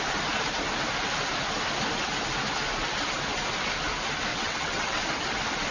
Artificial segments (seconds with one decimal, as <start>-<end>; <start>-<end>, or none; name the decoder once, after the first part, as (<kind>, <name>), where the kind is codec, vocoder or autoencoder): 4.3-5.0 (vocoder, WaveNeXt)